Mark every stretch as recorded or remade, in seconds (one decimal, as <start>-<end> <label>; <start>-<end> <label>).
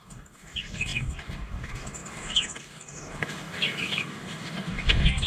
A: 0.0-5.3 remade